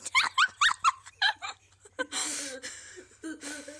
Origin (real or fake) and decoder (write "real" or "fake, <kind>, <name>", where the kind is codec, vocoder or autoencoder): fake, vocoder, BigVGAN v2